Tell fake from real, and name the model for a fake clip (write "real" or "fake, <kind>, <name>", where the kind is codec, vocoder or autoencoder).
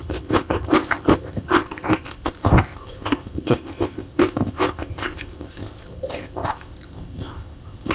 fake, codec, ZipCodec